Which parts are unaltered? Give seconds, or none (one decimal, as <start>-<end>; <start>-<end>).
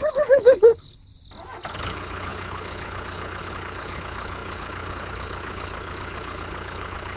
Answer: 1.1-1.7